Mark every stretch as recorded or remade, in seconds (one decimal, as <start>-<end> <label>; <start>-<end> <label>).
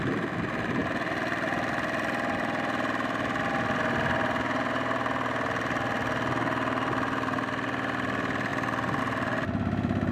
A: 0.0-10.1 recorded